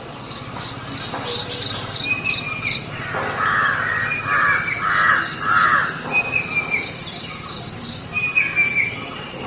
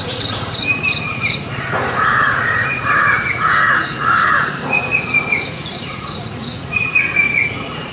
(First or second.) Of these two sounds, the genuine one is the first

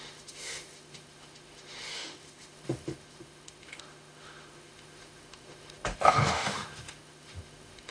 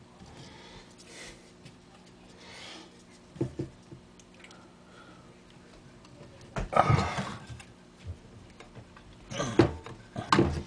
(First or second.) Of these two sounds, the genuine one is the second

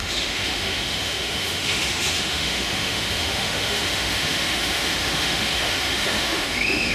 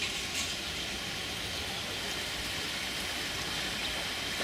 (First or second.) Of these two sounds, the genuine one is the second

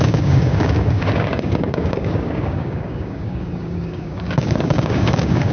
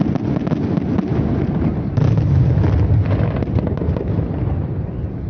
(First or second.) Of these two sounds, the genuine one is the second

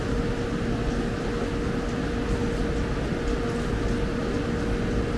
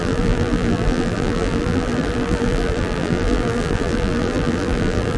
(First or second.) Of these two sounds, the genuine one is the first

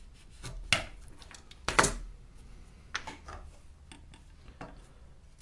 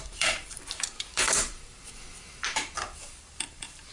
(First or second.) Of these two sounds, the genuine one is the first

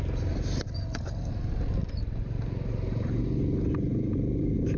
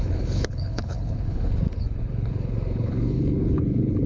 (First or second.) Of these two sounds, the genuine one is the first